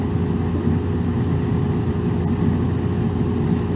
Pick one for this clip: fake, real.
real